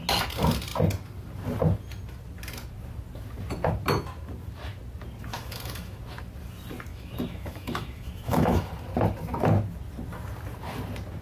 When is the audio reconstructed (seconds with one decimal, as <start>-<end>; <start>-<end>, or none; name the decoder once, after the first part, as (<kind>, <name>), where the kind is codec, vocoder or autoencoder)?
5.3-6.0 (autoencoder, DAC-VAE); 6.9-8.7